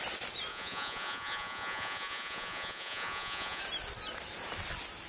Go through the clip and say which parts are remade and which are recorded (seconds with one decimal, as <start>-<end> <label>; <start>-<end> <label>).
0.0-0.5 recorded; 0.5-3.6 remade; 3.6-5.1 recorded